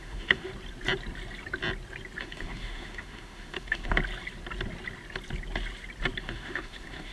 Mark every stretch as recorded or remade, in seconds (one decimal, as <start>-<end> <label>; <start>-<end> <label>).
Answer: 0.0-0.5 remade; 0.5-2.2 recorded; 2.2-4.0 remade; 4.0-6.2 recorded; 6.2-7.1 remade